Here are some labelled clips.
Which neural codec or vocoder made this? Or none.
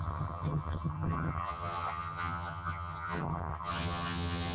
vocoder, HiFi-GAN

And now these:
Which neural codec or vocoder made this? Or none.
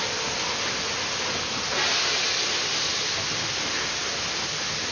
none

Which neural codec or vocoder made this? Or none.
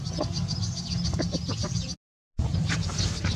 none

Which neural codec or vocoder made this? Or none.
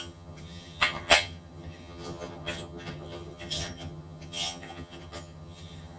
vocoder, HiFi-GAN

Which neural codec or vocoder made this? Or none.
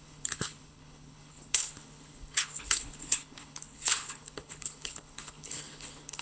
codec, HILCodec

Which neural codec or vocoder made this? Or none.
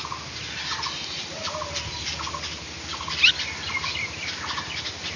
none